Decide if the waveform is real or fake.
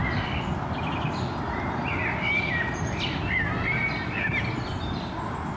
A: real